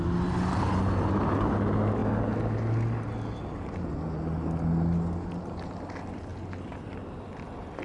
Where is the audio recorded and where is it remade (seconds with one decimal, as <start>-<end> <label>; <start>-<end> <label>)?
0.0-7.8 recorded